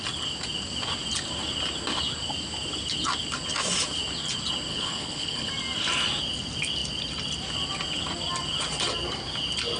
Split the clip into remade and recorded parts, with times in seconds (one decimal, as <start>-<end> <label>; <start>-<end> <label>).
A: 0.0-4.7 recorded; 4.7-5.5 remade; 5.5-9.8 recorded